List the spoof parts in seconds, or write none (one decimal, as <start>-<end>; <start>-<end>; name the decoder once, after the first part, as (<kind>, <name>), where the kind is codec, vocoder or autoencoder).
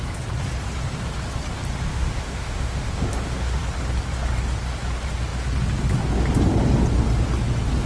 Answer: 1.9-3.6 (autoencoder, DAC-VAE)